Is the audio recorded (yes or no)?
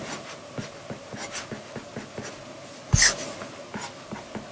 yes